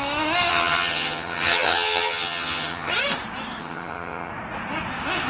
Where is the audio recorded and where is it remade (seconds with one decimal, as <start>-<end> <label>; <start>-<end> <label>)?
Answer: 0.0-0.5 recorded; 0.5-2.9 remade; 2.9-3.6 recorded; 3.6-4.3 remade; 4.3-5.3 recorded